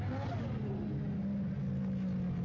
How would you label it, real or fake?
real